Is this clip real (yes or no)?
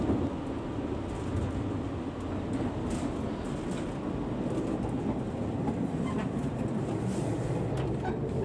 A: yes